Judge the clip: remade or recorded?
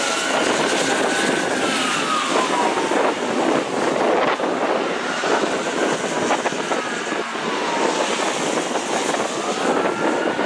recorded